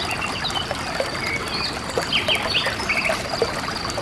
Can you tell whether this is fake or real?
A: real